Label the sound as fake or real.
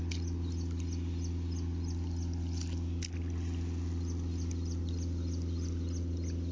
real